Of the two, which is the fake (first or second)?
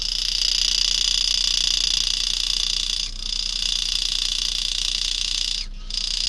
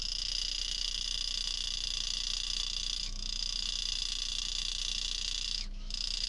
second